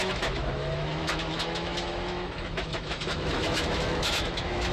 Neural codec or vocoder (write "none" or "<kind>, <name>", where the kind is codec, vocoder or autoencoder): autoencoder, DAC-VAE